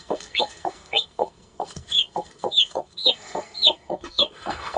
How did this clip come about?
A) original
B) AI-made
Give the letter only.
B